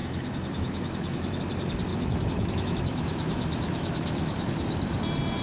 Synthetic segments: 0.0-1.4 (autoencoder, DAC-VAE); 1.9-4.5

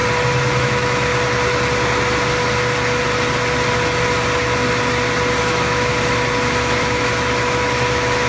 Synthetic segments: 0.6-1.1 (autoencoder, DAC-VAE); 5.4-8.3

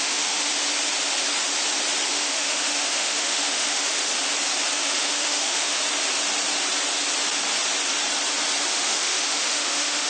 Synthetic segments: 0.0-0.5 (autoencoder, DAC-VAE); 2.1-4.0; 4.7-5.8; 8.7-10.1

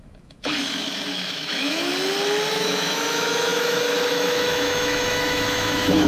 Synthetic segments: 0.0-1.9 (autoencoder, DAC-VAE); 2.5-6.1

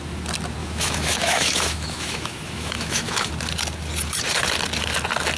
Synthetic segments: 0.6-3.3 (autoencoder, DAC-VAE)

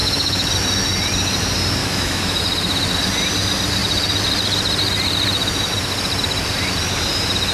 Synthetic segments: 0.0-0.5 (autoencoder, DAC-VAE); 1.8-2.4

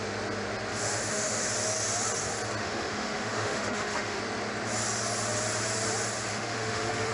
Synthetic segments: 0.7-1.5 (autoencoder, DAC-VAE); 2.6-4.2; 6.3-7.1

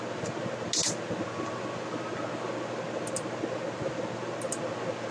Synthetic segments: none